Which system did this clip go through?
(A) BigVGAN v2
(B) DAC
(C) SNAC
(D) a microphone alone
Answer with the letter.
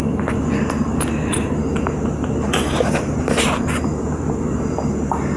A